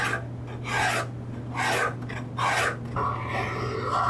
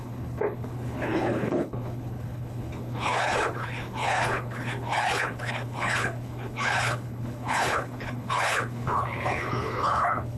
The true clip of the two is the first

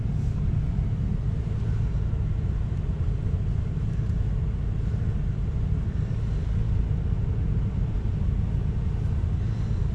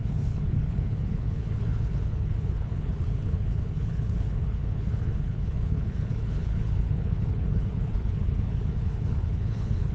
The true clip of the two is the first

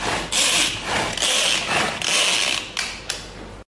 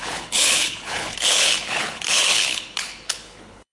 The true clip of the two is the first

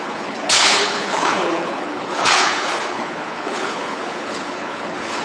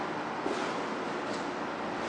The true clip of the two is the second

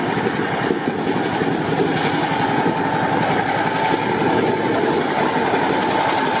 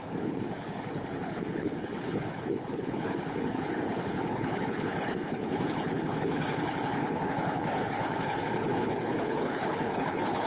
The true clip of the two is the first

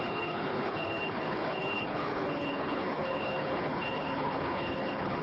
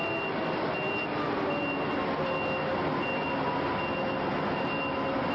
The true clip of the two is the second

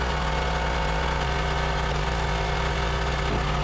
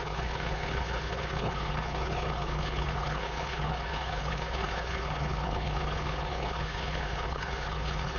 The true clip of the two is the first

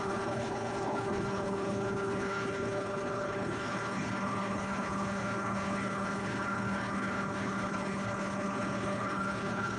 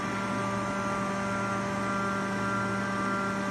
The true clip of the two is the second